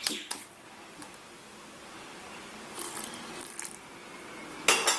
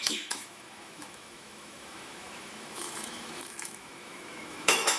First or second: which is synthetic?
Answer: second